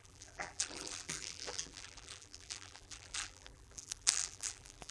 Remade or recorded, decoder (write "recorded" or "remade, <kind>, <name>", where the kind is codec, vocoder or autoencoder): remade, vocoder, BigVGAN v2